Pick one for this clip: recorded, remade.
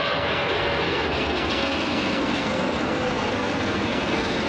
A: remade